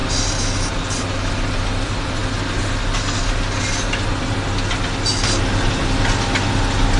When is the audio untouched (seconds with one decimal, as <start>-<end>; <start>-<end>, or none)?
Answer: 0.0-7.0